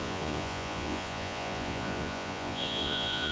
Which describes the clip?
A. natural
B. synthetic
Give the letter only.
B